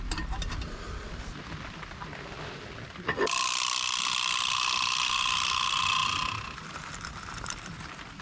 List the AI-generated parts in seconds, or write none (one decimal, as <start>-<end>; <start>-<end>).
none